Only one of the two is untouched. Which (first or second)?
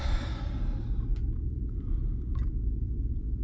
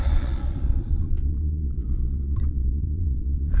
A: first